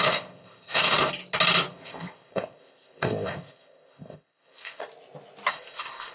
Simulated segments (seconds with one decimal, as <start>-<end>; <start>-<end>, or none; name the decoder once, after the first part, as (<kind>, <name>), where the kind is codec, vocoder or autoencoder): 0.0-1.1 (codec, ZipCodec); 1.7-4.8; 5.5-6.1